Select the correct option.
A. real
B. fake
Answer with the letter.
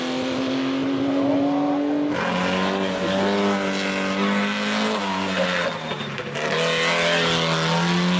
A